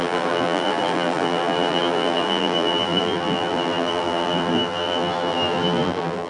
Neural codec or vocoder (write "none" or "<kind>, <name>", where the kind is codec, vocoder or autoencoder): vocoder, BigVGAN v2